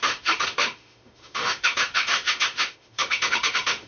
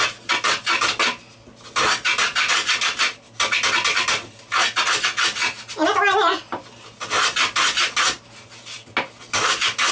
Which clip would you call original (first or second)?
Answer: second